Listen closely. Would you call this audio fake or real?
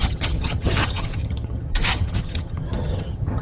fake